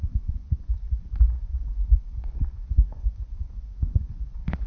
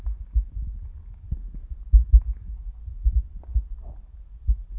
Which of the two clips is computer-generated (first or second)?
first